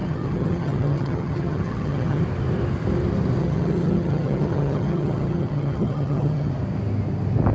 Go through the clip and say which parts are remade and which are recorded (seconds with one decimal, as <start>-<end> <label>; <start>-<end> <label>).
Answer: 0.0-2.2 remade; 2.2-3.4 recorded; 3.4-6.5 remade; 6.5-7.5 recorded